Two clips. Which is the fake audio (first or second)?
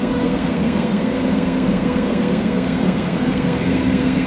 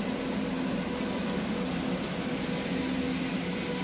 first